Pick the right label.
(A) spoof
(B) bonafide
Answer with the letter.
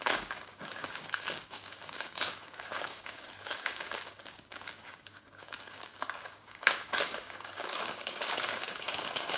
A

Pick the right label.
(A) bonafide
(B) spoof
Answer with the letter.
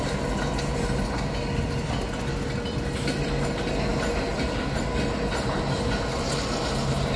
A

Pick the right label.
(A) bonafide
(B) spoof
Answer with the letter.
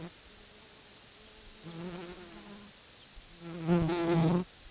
A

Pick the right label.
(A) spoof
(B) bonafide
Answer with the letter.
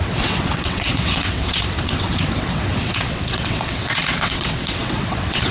A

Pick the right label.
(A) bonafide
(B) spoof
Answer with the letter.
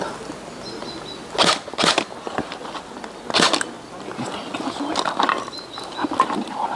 A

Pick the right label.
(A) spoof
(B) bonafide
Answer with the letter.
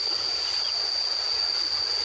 B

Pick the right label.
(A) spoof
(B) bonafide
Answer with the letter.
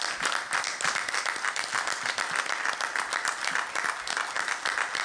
B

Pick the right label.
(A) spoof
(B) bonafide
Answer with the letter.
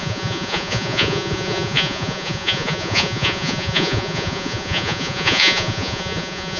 A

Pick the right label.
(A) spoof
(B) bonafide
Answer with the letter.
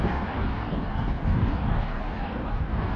A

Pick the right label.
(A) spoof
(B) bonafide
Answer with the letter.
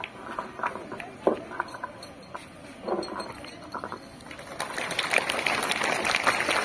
B